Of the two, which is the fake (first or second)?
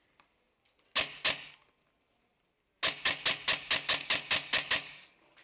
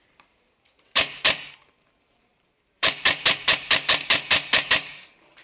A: second